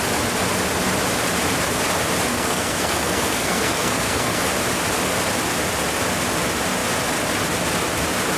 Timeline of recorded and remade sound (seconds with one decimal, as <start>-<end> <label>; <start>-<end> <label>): 0.0-2.3 recorded; 2.3-4.4 remade; 4.4-8.4 recorded